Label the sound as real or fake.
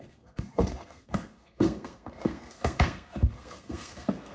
fake